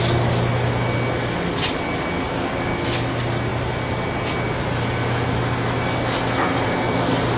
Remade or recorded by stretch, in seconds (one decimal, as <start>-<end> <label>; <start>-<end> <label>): 0.0-7.4 recorded